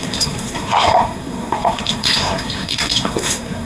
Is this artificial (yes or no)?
yes